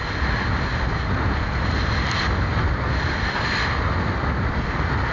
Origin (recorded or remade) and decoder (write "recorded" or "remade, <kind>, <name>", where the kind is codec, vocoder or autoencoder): recorded